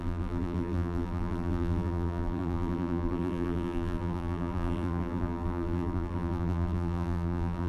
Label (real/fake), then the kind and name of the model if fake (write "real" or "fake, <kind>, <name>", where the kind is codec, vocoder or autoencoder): fake, vocoder, BigVGAN v2